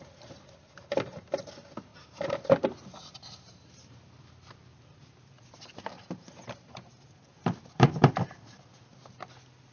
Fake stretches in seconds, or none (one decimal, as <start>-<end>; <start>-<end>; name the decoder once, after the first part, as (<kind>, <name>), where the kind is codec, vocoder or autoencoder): 1.9-4.3 (vocoder, BigVGAN v2); 4.7-8.1